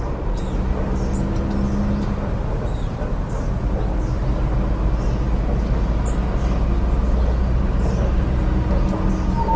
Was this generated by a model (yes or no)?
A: no